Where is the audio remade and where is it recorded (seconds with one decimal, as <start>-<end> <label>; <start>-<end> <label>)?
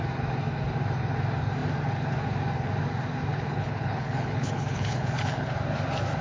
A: 0.0-3.3 recorded; 3.3-5.5 remade; 5.5-6.2 recorded